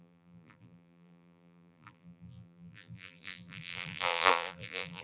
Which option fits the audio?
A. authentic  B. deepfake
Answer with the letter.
B